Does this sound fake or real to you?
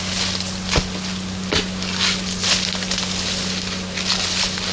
real